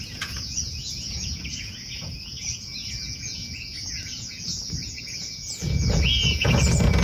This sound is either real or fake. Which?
fake